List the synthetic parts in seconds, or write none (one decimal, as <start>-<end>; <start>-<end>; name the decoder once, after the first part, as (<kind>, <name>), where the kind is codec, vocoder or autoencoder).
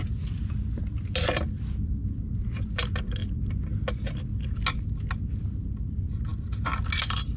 none